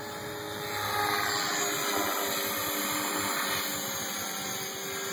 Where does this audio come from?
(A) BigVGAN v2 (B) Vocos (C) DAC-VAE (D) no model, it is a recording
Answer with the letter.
D